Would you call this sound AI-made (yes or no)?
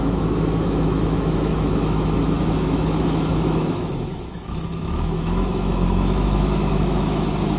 yes